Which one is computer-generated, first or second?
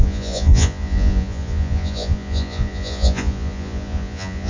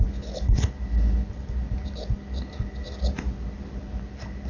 first